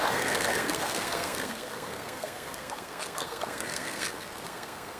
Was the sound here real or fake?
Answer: fake